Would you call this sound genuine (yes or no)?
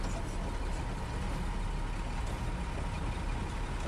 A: yes